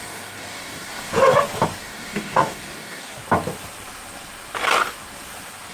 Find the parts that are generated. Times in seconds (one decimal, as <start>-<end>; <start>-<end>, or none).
0.0-1.1; 1.8-3.2